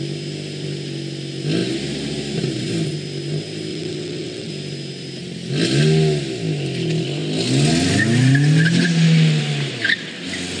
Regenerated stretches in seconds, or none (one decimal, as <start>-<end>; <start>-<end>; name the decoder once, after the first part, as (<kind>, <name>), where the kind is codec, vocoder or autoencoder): 3.7-4.5 (vocoder, WaveNeXt)